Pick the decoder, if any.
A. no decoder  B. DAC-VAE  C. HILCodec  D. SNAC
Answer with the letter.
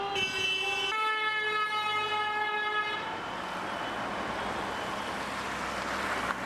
A